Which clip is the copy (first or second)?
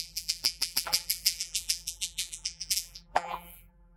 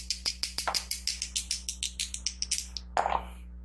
first